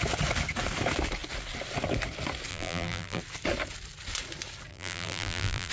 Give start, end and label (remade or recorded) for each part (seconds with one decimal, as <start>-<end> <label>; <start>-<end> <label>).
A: 0.0-2.5 recorded; 2.5-3.2 remade; 3.2-4.7 recorded; 4.7-5.7 remade